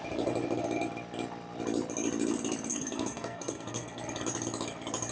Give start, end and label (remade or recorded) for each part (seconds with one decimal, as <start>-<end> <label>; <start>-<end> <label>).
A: 0.0-2.7 recorded; 2.7-4.0 remade; 4.0-5.1 recorded